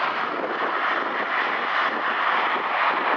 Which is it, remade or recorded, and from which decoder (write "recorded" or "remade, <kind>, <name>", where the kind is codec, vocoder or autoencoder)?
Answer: recorded